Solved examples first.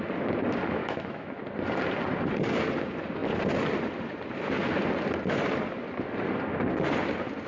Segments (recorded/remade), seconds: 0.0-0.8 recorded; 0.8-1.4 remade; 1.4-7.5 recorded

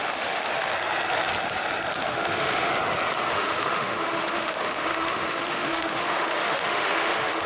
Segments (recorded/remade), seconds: 0.0-0.7 remade; 0.7-2.0 recorded; 2.0-2.7 remade; 2.7-3.3 recorded; 3.3-7.5 remade